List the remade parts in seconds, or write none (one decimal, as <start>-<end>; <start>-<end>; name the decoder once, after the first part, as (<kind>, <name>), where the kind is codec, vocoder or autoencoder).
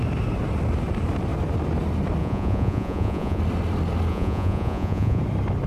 2.2-3.4 (vocoder, Vocos); 4.1-5.2